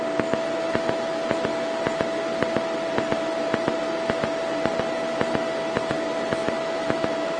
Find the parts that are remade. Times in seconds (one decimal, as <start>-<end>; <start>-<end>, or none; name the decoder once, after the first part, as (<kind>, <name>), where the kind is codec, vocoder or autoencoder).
6.4-7.4 (autoencoder, DAC-VAE)